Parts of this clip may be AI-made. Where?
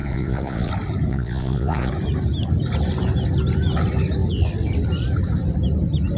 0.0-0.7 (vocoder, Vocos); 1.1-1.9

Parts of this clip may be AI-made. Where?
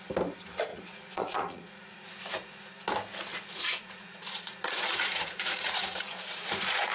0.7-2.7 (vocoder, Vocos); 3.3-6.9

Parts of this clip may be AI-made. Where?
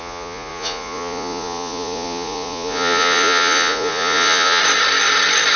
0.0-4.6 (vocoder, Vocos)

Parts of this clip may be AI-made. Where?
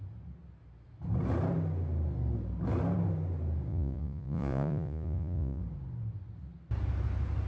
3.7-5.6 (vocoder, Vocos)